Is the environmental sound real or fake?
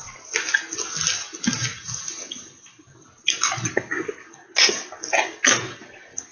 real